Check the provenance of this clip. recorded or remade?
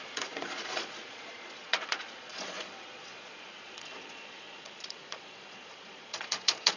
remade